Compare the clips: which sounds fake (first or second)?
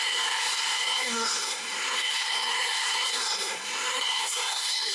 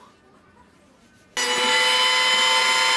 first